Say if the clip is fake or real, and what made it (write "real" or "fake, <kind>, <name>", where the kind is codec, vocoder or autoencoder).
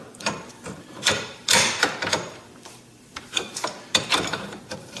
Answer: fake, vocoder, BigVGAN v2